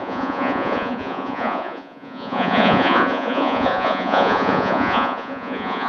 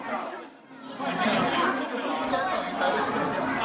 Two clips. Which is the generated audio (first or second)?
first